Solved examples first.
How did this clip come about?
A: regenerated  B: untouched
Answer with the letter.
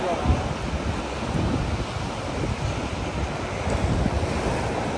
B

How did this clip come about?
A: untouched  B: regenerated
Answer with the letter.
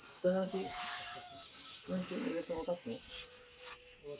B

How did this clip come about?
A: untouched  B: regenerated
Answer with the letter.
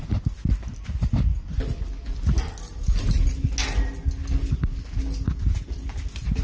A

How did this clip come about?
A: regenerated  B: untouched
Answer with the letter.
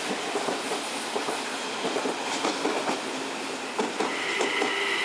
B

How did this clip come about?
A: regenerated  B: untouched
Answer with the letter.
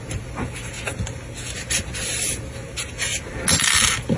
B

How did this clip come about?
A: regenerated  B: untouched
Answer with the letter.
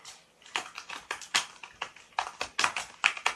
B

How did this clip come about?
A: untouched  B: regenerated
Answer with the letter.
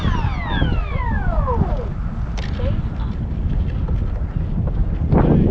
A